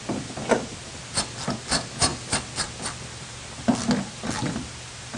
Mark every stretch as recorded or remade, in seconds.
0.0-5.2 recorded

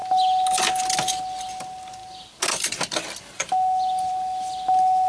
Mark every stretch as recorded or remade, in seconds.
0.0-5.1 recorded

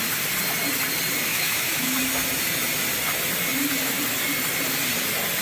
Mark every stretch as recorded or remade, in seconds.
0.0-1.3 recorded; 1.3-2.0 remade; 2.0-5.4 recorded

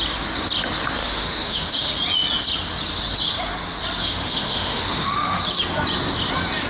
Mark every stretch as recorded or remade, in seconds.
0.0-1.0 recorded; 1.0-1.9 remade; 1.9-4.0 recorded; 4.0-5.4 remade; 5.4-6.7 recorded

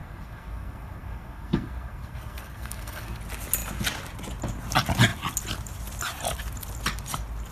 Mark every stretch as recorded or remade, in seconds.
0.0-3.2 remade; 3.2-7.5 recorded